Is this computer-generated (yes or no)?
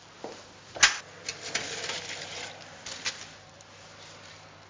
no